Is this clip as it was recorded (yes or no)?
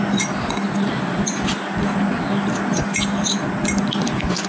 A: yes